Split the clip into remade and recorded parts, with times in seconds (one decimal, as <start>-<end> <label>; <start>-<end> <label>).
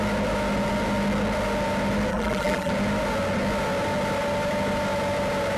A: 0.0-2.1 recorded; 2.1-2.7 remade; 2.7-5.6 recorded